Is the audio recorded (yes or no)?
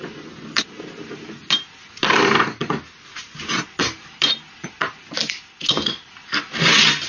yes